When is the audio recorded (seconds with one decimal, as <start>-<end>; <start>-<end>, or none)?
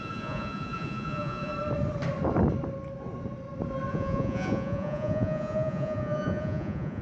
1.5-3.9